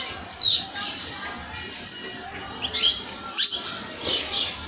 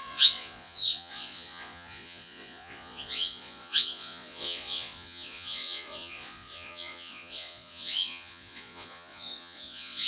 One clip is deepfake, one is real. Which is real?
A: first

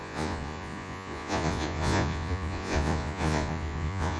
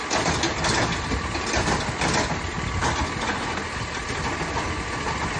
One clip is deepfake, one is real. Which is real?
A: second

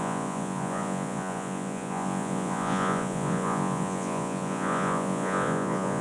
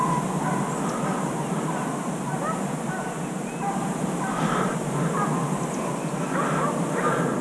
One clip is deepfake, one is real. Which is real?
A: second